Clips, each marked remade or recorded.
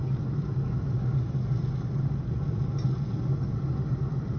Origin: recorded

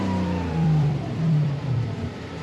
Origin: remade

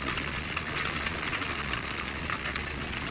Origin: remade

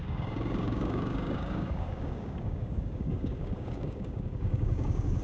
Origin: remade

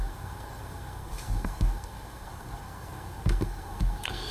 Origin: remade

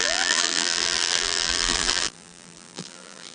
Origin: remade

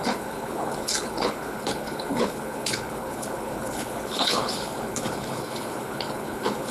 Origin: remade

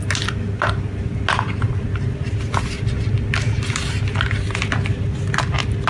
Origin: recorded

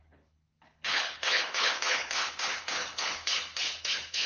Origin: remade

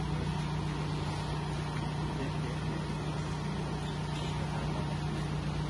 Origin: recorded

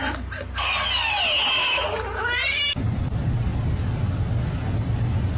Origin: recorded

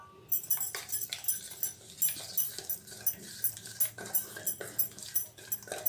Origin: recorded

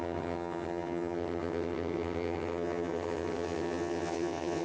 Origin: remade